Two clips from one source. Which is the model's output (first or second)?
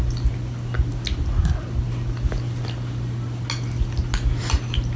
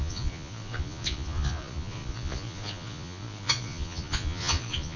second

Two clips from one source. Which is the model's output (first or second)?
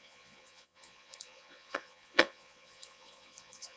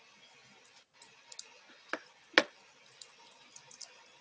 first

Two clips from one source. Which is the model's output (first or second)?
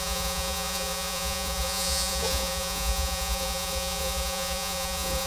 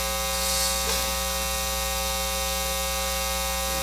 first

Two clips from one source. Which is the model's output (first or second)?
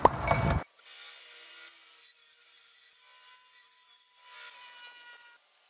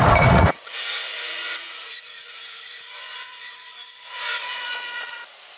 second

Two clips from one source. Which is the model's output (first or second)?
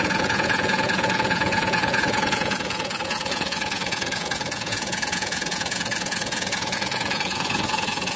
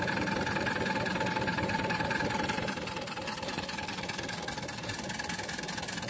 first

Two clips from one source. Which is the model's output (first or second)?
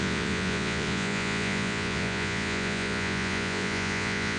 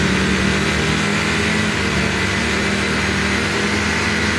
first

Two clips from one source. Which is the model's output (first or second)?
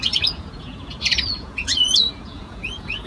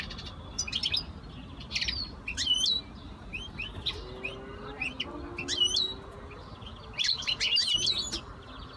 first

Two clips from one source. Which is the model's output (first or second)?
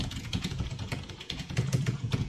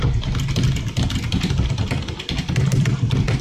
first